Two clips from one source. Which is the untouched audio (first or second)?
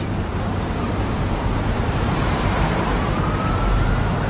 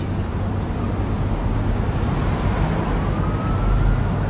second